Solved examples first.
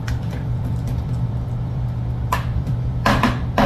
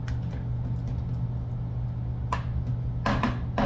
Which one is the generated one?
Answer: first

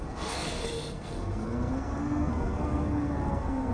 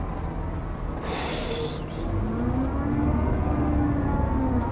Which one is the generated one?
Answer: first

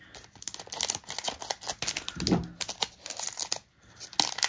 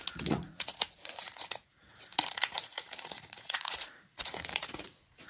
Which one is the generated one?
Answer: second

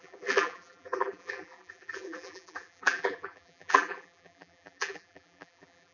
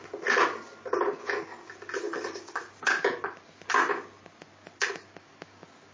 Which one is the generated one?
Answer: first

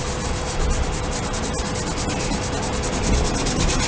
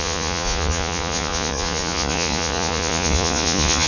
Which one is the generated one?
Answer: second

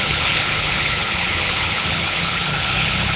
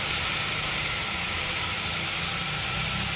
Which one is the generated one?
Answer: first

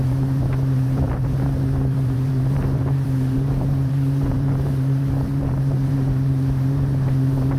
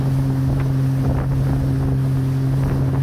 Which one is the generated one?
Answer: first